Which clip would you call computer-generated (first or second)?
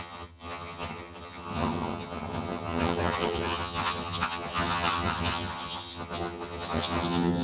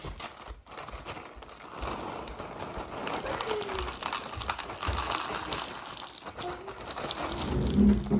first